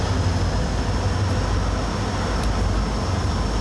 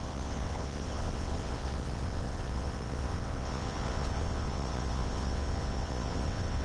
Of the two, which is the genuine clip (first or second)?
first